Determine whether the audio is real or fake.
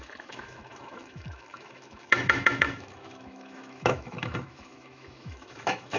fake